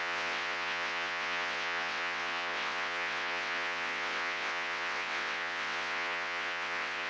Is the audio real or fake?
fake